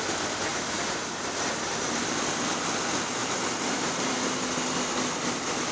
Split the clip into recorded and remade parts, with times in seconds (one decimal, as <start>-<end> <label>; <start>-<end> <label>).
0.0-0.5 recorded; 0.5-1.7 remade; 1.7-3.2 recorded; 3.2-4.4 remade; 4.4-5.7 recorded